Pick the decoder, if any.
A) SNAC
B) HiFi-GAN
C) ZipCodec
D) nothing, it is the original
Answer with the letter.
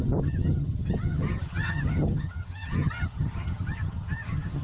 B